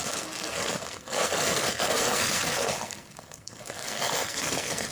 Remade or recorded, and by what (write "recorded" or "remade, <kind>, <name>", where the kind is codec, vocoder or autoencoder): remade, codec, SNAC